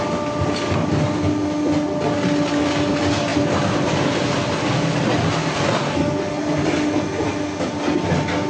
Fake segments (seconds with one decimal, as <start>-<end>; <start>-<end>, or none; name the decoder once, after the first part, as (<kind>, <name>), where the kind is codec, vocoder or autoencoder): none